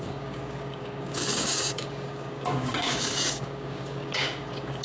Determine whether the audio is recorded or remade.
remade